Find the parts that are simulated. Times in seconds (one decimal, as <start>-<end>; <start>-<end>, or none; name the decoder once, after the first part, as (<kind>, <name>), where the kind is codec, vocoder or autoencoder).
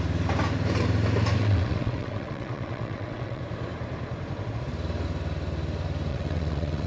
1.4-3.4 (vocoder, WaveNeXt); 6.1-6.9